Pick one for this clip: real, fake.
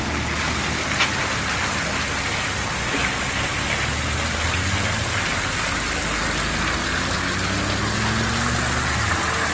real